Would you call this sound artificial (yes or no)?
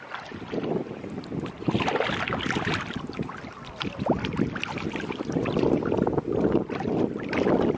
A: no